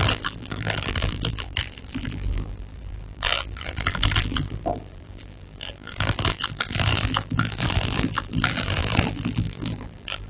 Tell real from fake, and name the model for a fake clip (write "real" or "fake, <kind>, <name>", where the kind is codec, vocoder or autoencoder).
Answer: fake, vocoder, BigVGAN v2